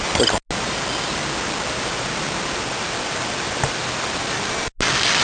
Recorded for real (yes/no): yes